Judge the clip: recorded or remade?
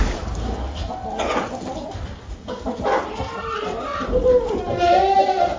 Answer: recorded